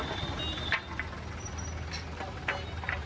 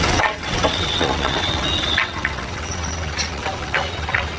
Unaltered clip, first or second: first